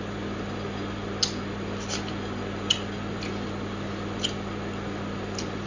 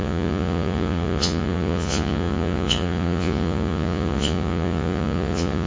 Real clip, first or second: first